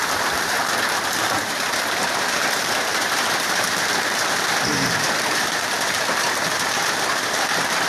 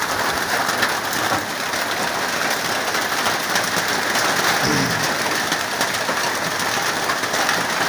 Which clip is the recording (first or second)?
second